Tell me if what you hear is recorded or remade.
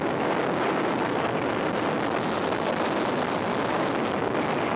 recorded